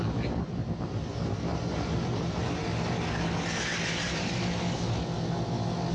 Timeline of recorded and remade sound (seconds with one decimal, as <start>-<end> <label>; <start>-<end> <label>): 0.0-2.4 remade; 2.4-5.9 recorded